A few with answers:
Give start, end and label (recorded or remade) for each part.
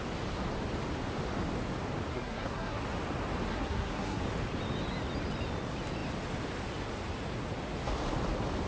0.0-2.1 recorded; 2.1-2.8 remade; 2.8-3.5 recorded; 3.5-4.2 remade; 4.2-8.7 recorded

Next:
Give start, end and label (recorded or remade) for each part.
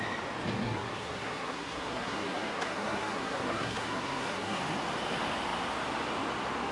0.0-0.6 recorded; 0.6-4.6 remade; 4.6-6.7 recorded